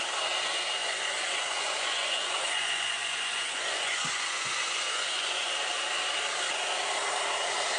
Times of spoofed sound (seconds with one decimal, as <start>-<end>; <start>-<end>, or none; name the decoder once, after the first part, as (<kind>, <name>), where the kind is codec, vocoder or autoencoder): 0.8-5.5 (vocoder, Vocos)